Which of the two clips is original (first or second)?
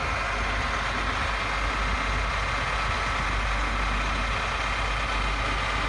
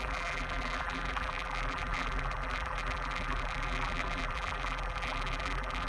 first